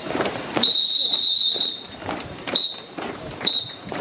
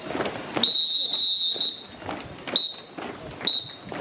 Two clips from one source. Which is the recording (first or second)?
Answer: second